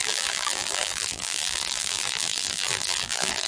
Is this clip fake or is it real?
fake